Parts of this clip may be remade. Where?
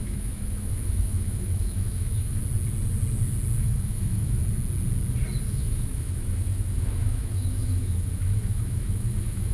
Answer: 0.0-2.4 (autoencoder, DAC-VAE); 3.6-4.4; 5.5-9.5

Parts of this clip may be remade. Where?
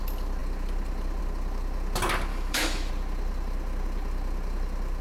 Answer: 2.3-2.9 (autoencoder, DAC-VAE)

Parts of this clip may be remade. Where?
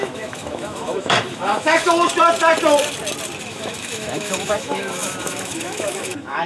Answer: 0.0-2.1 (autoencoder, DAC-VAE); 3.5-6.5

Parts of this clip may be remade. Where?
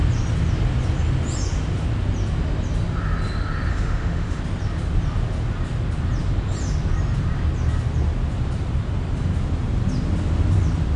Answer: 3.7-4.4 (autoencoder, DAC-VAE)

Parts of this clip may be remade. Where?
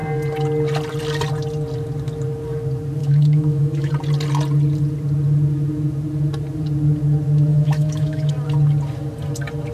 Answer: 3.0-3.9 (autoencoder, DAC-VAE); 7.5-8.3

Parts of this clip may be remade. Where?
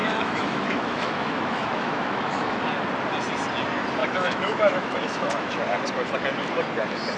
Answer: 0.0-2.7 (autoencoder, DAC-VAE); 4.0-5.6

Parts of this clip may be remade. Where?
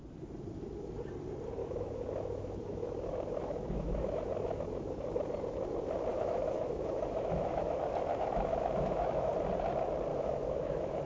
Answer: 1.6-5.1 (autoencoder, DAC-VAE); 6.1-9.3; 10.1-11.1